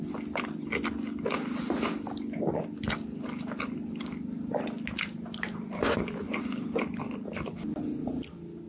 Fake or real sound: real